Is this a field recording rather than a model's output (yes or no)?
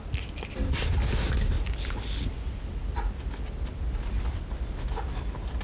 yes